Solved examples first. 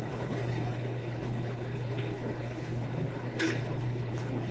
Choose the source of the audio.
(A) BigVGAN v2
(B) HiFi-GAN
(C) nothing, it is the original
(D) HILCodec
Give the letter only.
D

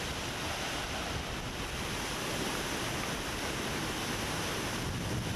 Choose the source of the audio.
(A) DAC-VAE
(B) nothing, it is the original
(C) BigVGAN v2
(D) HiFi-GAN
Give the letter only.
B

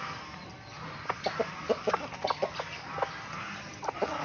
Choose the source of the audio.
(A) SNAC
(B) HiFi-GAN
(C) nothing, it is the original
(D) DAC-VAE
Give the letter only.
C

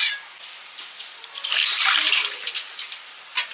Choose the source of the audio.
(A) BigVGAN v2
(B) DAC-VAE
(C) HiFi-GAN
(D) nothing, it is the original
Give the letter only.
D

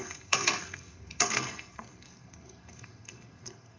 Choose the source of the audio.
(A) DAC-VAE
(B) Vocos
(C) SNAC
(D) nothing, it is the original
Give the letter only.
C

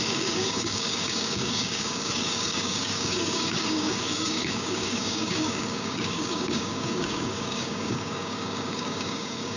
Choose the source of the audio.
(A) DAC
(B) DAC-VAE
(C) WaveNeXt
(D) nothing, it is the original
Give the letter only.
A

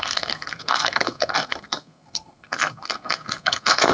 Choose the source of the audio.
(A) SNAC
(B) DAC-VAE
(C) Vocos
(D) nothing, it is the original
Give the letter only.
A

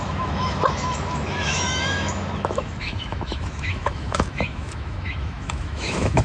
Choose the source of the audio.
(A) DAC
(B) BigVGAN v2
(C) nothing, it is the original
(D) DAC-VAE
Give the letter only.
D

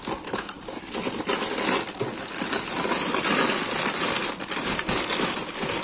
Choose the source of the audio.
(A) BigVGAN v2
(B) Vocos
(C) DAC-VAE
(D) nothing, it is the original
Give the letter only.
D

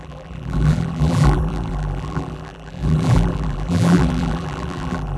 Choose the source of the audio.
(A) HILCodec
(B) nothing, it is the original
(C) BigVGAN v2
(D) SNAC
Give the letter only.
C